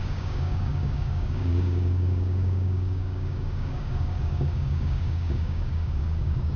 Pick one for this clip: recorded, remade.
remade